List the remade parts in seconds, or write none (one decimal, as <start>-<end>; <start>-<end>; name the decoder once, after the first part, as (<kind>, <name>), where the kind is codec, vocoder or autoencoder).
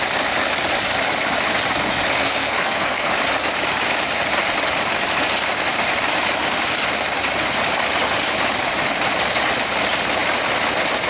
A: 2.2-3.1 (codec, SNAC)